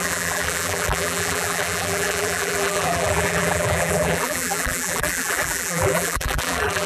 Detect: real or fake fake